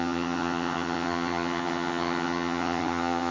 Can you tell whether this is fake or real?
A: fake